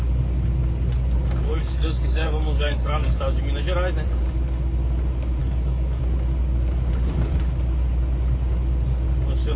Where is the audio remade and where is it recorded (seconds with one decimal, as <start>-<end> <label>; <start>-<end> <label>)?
0.0-1.6 recorded; 1.6-3.2 remade; 3.2-5.4 recorded; 5.4-6.0 remade; 6.0-9.6 recorded